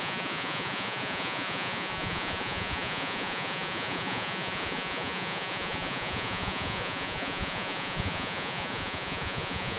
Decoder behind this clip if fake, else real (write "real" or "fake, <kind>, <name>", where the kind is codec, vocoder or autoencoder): fake, vocoder, Vocos